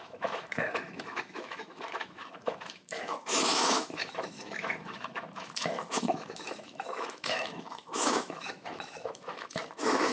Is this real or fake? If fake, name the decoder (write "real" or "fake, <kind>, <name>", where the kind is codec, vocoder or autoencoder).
fake, autoencoder, DAC-VAE